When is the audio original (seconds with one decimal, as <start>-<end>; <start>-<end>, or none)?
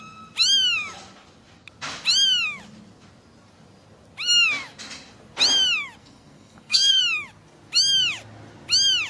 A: 0.0-6.0; 7.0-9.1